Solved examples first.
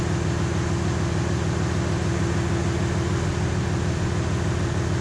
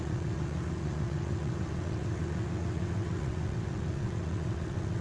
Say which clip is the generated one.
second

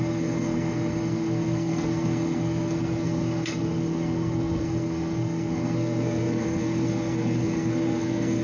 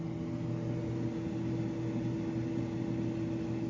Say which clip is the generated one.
first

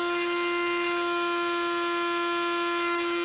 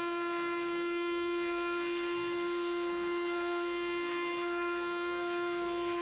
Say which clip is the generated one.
second